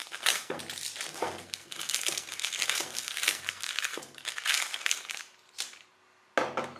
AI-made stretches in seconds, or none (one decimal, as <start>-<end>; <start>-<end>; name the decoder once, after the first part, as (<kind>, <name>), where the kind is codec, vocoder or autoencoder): 0.0-0.6 (codec, SNAC); 1.1-5.2